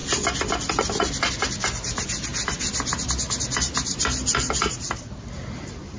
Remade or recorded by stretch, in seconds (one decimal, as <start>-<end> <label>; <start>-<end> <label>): 0.0-6.0 recorded